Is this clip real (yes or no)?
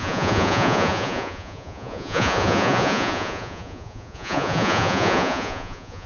no